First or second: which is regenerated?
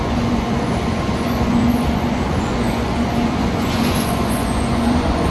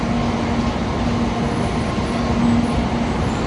first